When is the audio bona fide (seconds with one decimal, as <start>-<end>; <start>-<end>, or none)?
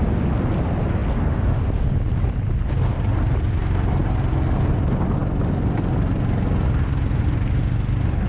0.0-8.3